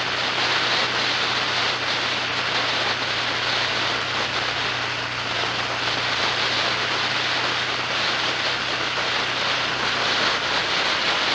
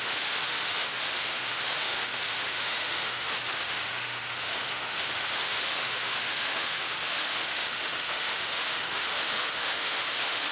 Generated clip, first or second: second